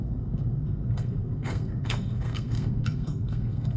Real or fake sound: fake